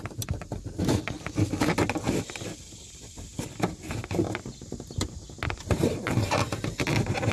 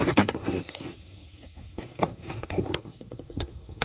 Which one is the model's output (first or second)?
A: second